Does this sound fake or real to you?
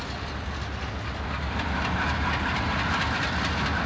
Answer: real